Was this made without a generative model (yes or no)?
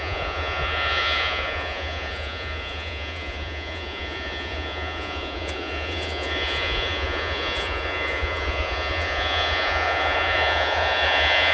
no